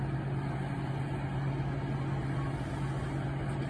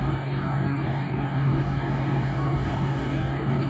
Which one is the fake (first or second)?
second